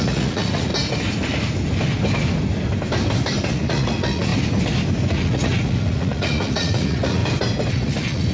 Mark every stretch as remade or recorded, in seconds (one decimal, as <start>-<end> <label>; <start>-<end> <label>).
0.0-0.7 remade; 0.7-3.5 recorded; 3.5-4.3 remade; 4.3-5.1 recorded; 5.1-7.2 remade; 7.2-7.7 recorded; 7.7-8.3 remade